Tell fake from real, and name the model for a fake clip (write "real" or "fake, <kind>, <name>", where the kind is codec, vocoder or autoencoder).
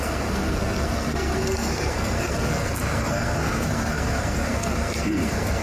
fake, codec, SNAC